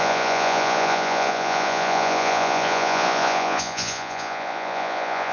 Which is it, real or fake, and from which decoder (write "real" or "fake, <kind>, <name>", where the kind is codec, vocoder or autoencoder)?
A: fake, vocoder, Vocos